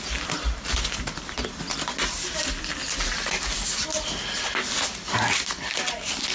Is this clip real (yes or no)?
yes